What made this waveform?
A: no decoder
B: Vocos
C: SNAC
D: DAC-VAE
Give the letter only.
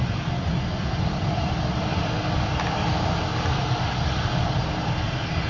A